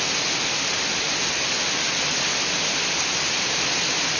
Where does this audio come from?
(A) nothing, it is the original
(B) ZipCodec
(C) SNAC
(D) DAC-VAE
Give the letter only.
A